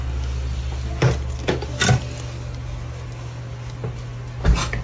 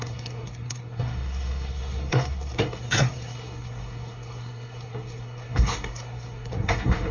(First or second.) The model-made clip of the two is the second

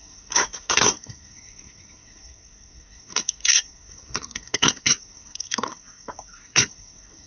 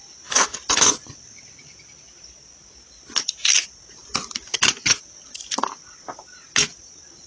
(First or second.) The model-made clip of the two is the first